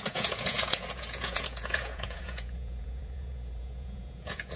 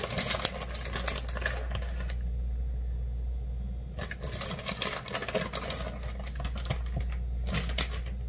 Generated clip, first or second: first